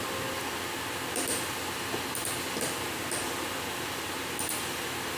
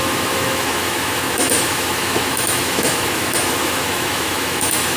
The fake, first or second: second